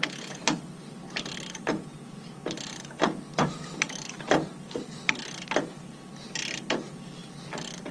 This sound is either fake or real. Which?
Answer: real